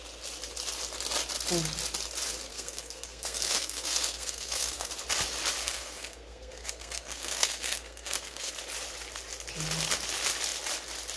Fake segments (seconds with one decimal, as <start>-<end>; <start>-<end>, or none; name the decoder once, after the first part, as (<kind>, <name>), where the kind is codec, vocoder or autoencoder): 2.5-4.9 (codec, SNAC); 5.6-8.5